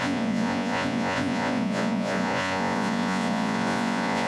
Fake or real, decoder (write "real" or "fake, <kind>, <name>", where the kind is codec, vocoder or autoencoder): fake, vocoder, Vocos